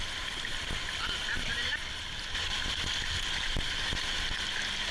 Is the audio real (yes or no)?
yes